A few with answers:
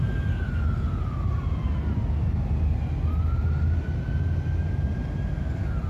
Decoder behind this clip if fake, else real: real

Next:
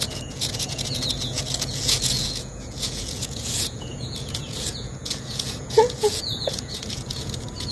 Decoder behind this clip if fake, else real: fake, vocoder, Vocos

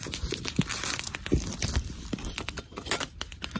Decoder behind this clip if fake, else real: real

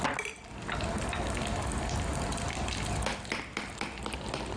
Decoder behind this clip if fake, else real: real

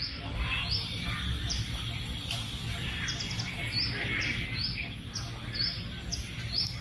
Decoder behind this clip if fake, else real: real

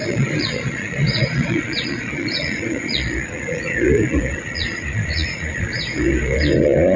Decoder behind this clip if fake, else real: fake, vocoder, Vocos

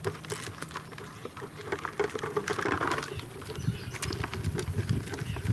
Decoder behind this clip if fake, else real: real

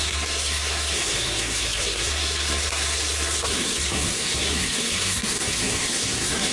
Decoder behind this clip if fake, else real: fake, codec, SNAC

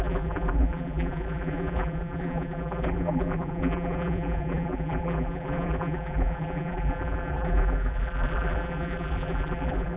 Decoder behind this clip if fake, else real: fake, vocoder, BigVGAN v2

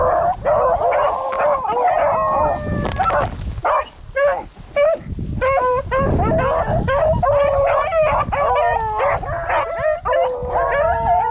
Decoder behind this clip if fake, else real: real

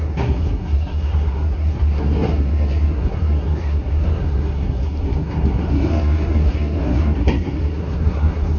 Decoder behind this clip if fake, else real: fake, codec, SNAC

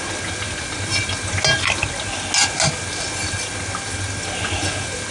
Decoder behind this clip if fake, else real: real